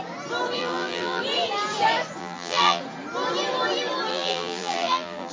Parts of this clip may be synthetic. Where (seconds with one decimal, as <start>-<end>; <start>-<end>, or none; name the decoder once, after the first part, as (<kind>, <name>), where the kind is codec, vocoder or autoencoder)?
0.6-1.2 (vocoder, BigVGAN v2); 2.2-2.8; 4.1-5.3